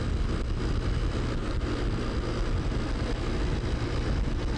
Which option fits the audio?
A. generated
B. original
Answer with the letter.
B